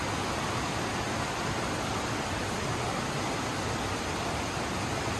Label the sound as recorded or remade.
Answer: recorded